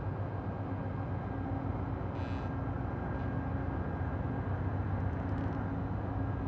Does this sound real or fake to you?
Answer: real